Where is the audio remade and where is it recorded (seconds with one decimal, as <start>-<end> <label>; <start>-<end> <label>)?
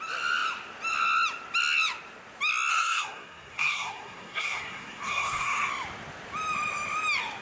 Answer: 0.0-2.7 recorded; 2.7-5.7 remade; 5.7-7.4 recorded